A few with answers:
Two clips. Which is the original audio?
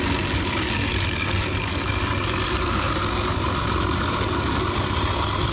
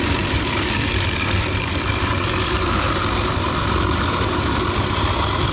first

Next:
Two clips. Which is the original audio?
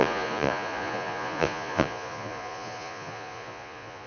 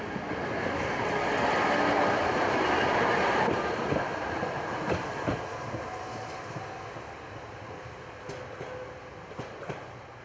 second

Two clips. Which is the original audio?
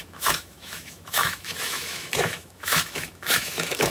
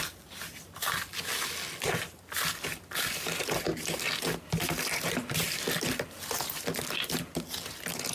second